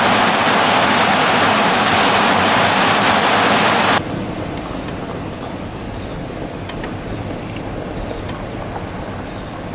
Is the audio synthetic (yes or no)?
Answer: no